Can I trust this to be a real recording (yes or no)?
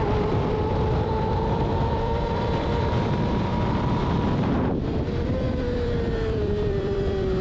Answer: no